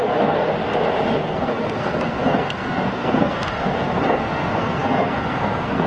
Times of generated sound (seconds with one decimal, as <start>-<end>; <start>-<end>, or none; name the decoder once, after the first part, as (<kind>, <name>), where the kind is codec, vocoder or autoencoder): 0.0-0.5 (codec, SNAC); 1.2-5.9